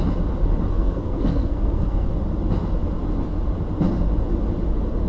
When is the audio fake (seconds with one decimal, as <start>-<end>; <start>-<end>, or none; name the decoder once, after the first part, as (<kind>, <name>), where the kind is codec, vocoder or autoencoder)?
0.7-2.1 (codec, SNAC)